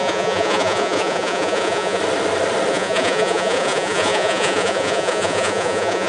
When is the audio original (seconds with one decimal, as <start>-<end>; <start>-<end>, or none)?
2.0-2.7

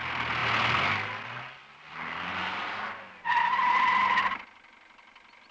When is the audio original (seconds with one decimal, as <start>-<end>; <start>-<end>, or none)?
0.0-5.5

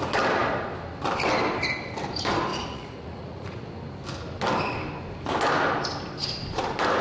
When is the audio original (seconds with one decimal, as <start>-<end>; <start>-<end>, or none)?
0.0-2.5; 3.6-7.0

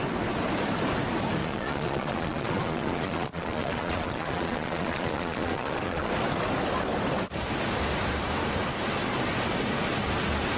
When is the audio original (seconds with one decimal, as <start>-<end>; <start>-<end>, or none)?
0.0-1.4; 6.1-10.6

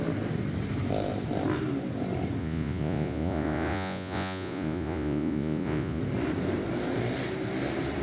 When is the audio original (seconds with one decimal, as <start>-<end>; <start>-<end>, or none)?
0.0-2.4; 6.0-8.0

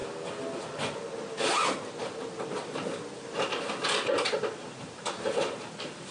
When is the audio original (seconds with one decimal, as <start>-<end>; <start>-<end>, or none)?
0.0-6.1